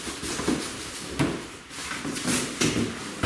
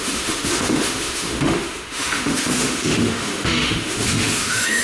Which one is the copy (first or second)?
second